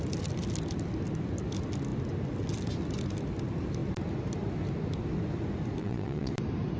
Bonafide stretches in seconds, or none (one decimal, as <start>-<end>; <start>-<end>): 0.0-5.8; 6.3-6.8